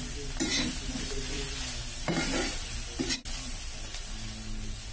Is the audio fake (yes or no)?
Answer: no